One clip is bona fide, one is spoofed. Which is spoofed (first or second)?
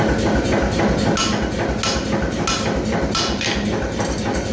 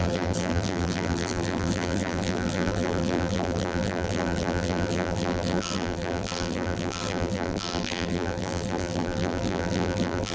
second